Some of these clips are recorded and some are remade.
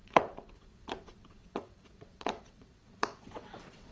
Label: remade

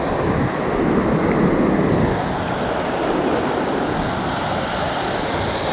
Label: recorded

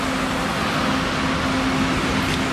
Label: recorded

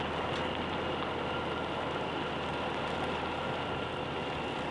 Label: recorded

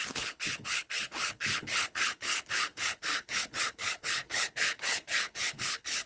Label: remade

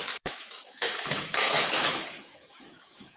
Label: remade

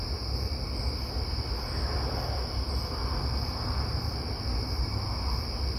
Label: recorded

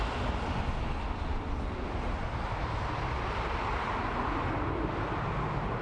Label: recorded